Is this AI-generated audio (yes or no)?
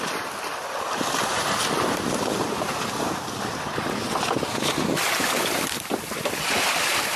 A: no